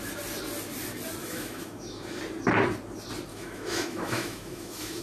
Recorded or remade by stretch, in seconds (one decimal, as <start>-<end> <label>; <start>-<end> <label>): 0.0-1.2 recorded; 1.2-2.2 remade; 2.2-3.3 recorded; 3.3-5.0 remade